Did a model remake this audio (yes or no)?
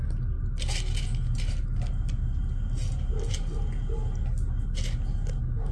no